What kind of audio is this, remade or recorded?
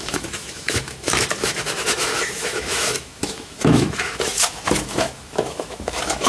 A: remade